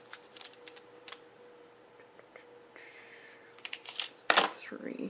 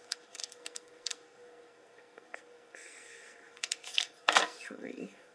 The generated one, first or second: second